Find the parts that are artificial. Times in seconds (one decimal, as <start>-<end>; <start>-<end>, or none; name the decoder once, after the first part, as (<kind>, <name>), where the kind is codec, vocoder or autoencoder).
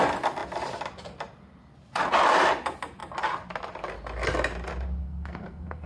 5.0-5.9 (codec, SNAC)